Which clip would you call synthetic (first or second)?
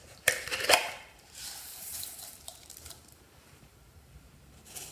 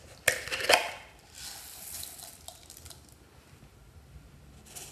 first